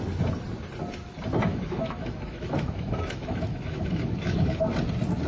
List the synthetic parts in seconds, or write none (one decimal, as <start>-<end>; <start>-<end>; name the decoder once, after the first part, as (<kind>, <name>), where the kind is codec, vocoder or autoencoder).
1.5-4.7 (autoencoder, DAC-VAE)